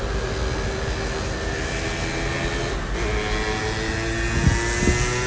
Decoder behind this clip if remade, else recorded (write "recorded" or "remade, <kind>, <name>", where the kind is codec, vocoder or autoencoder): recorded